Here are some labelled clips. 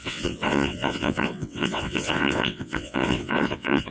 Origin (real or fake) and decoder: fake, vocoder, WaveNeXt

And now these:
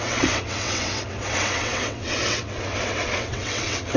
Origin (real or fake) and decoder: fake, vocoder, WaveNeXt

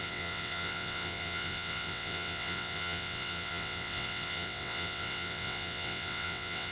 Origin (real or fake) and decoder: fake, vocoder, WaveNeXt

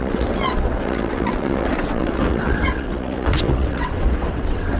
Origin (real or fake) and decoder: fake, vocoder, WaveNeXt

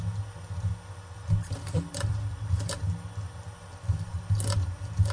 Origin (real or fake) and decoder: real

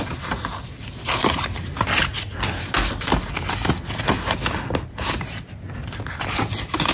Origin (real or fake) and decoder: real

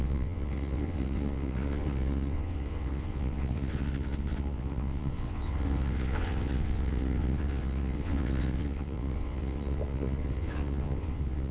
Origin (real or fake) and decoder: fake, vocoder, WaveNeXt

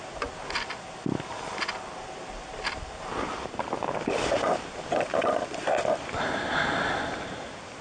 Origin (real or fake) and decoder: real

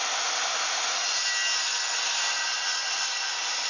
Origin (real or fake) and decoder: real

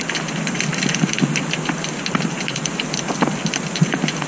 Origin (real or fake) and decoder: real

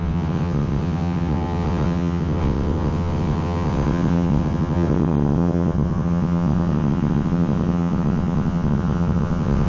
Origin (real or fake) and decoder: fake, vocoder, WaveNeXt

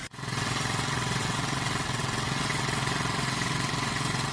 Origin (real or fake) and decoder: fake, vocoder, WaveNeXt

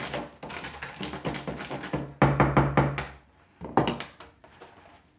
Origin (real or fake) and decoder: real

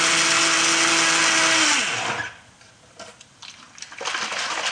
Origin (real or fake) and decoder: real